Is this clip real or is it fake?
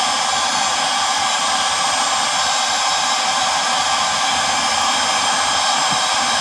real